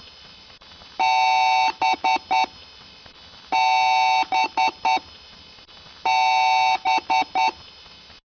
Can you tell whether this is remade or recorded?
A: recorded